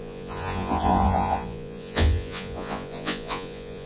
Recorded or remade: remade